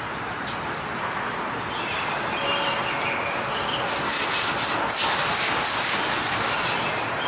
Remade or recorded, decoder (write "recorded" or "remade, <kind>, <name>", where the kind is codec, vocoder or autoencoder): recorded